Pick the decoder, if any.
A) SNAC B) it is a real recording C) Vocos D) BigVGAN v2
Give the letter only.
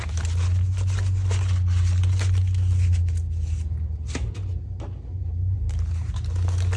B